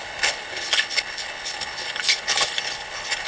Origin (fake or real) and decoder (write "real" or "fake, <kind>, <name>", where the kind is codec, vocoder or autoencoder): fake, codec, HILCodec